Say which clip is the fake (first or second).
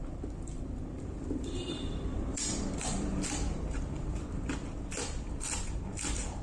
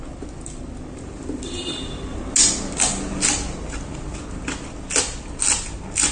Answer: first